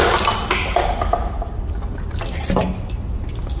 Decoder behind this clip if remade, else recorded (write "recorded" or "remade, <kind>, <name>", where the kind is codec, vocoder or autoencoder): recorded